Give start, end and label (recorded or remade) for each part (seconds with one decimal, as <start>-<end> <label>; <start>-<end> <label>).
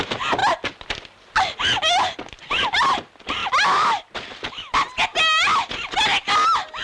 0.0-6.8 recorded